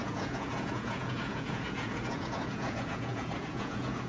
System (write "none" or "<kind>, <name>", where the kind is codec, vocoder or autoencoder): vocoder, Vocos